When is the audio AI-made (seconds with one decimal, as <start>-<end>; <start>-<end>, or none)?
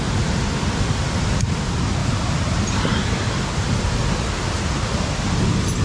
2.0-4.0